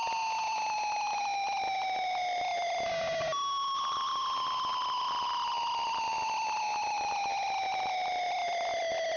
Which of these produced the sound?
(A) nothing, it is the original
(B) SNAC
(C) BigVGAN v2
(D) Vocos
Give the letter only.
A